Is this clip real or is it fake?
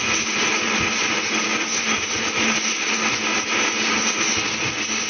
real